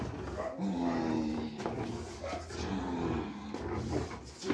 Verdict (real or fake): real